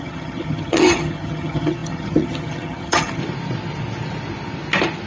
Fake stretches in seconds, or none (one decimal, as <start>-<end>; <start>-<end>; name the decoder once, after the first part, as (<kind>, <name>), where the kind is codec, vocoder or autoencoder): 0.0-3.2 (vocoder, HiFi-GAN)